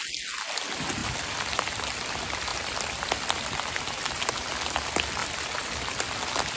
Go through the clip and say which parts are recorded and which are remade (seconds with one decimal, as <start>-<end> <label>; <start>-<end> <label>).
0.0-1.0 recorded; 1.0-2.1 remade; 2.1-2.5 recorded; 2.5-3.8 remade; 3.8-5.2 recorded; 5.2-5.9 remade; 5.9-6.6 recorded